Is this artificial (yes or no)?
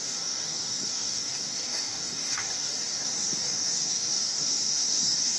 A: yes